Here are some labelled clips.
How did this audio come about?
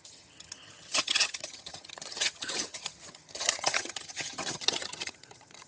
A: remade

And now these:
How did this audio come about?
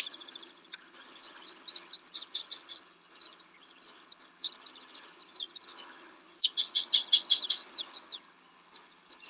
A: remade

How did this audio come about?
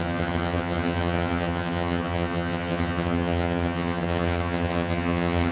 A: remade